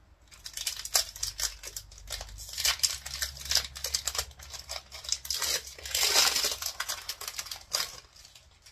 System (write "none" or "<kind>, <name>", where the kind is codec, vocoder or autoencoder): none